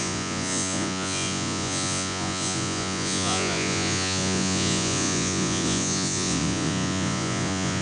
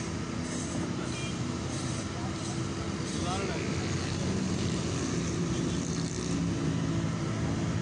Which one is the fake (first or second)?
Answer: first